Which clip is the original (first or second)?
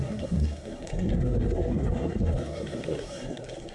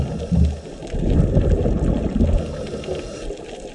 second